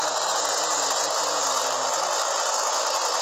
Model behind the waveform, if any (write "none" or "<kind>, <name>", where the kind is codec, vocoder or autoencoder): none